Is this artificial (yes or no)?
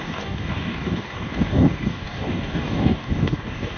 yes